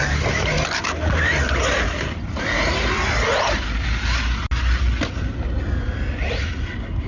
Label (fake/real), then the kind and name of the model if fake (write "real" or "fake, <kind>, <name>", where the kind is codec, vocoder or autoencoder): real